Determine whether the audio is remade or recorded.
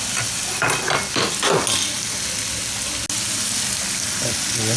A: recorded